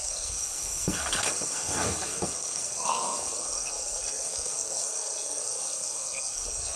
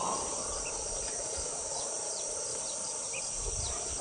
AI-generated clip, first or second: first